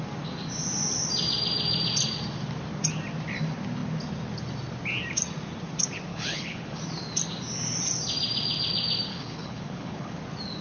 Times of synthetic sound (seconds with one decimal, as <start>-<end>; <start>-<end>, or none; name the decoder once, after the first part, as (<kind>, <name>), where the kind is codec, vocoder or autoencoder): 6.1-6.8 (codec, HILCodec); 9.1-10.2